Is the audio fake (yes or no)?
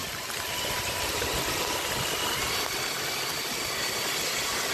no